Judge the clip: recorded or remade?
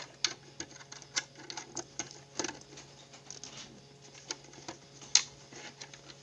recorded